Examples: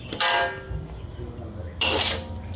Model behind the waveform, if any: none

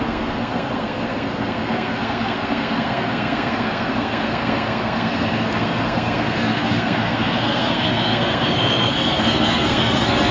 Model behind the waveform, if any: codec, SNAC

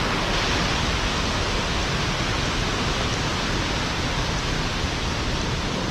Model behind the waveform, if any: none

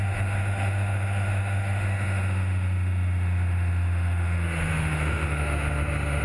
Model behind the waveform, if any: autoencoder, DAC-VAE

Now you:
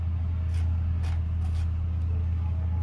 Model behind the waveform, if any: none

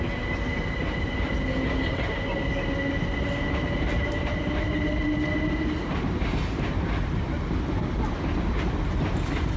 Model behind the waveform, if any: none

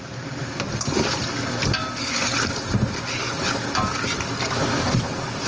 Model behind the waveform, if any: none